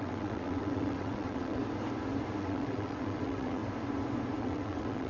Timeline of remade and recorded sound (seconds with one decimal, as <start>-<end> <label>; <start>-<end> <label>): 0.0-1.6 remade; 1.6-2.4 recorded; 2.4-3.6 remade; 3.6-4.4 recorded; 4.4-5.1 remade